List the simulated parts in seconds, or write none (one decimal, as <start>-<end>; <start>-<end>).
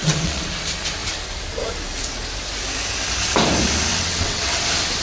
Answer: 0.0-0.5; 3.9-4.6